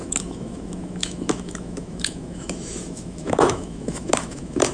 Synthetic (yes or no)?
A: yes